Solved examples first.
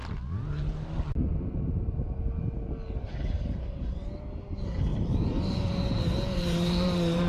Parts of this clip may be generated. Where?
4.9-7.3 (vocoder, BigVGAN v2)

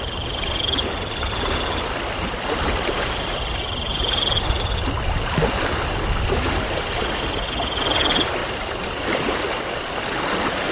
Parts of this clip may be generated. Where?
none